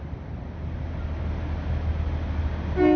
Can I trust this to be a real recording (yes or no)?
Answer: yes